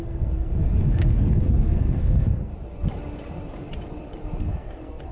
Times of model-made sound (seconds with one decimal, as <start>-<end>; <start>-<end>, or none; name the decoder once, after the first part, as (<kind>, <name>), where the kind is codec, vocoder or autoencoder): 0.0-2.5 (codec, SNAC); 4.4-5.1